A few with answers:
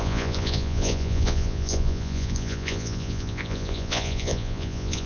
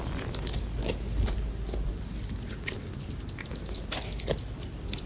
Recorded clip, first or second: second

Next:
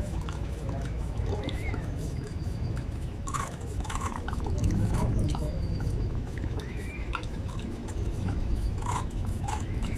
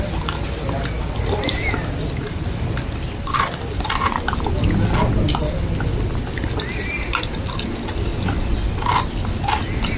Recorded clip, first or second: second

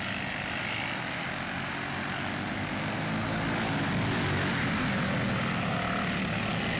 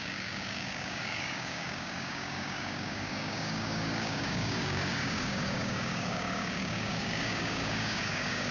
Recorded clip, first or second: first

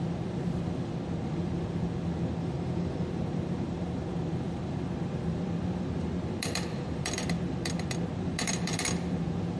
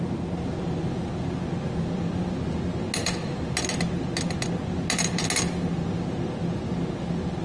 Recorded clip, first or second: second